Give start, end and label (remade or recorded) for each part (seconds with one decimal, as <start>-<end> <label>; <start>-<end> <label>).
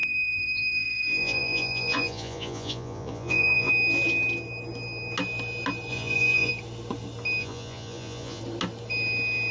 0.0-3.7 remade; 3.7-5.9 recorded; 5.9-6.5 remade; 6.5-7.4 recorded; 7.4-8.4 remade; 8.4-9.5 recorded